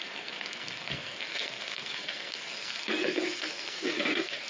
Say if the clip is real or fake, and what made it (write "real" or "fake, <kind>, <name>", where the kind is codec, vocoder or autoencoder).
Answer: fake, codec, SNAC